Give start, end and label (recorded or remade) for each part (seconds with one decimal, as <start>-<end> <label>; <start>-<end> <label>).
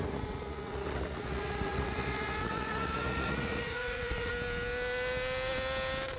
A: 0.0-4.3 remade; 4.3-6.2 recorded